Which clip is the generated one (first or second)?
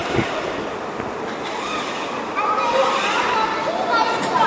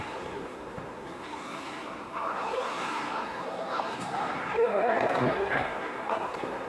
second